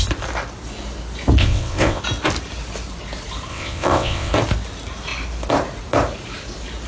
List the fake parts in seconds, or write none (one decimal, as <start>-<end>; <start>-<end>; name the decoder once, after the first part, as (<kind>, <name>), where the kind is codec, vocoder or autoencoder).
1.4-2.0 (vocoder, WaveNeXt); 3.5-4.3